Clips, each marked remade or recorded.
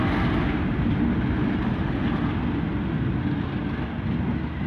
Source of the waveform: recorded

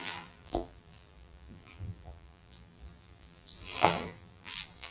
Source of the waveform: remade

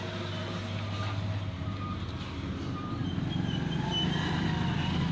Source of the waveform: recorded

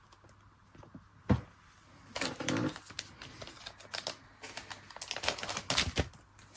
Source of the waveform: recorded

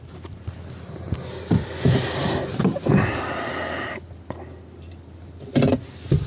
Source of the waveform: recorded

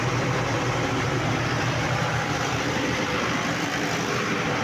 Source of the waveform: remade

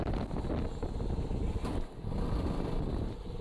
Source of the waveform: recorded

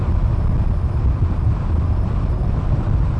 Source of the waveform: remade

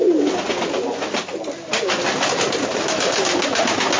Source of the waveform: recorded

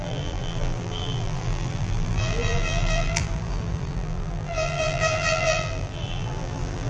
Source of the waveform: remade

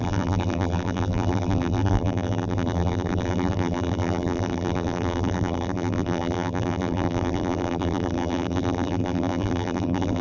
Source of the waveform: remade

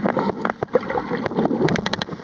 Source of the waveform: remade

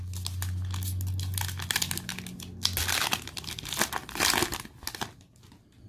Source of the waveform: recorded